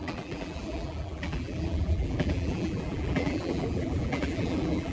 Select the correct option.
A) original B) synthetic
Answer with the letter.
B